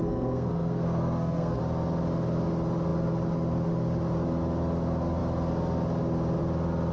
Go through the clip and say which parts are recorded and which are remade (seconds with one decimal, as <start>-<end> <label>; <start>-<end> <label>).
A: 0.0-1.6 remade; 1.6-6.9 recorded